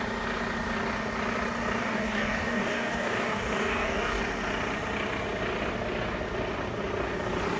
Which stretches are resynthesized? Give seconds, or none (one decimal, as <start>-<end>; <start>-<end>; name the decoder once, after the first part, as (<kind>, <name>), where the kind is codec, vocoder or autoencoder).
1.8-4.2 (codec, DAC)